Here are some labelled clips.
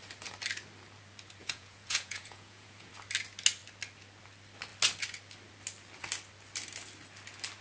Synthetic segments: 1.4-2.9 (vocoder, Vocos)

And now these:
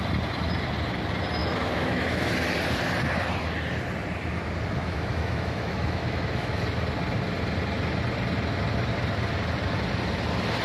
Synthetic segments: 1.4-2.3 (autoencoder, DAC-VAE); 4.8-6.6

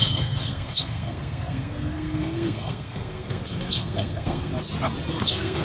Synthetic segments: 0.0-4.5 (codec, SNAC); 5.1-5.6